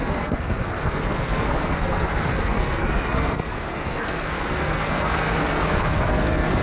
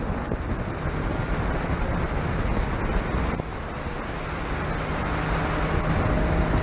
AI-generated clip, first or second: first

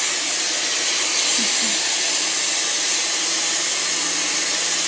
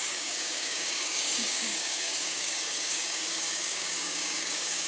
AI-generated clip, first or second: second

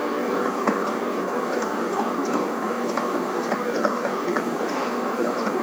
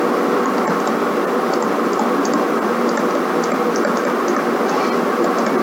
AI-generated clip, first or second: first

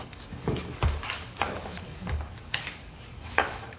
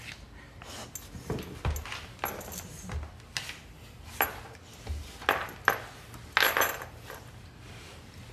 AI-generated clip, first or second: first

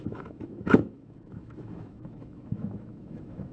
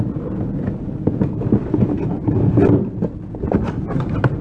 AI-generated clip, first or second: first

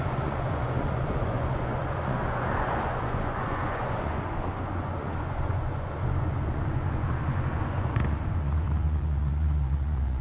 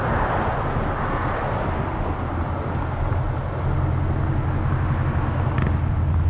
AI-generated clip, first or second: first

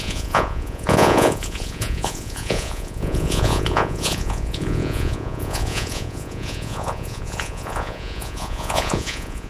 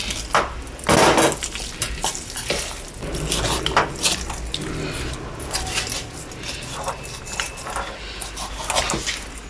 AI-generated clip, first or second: first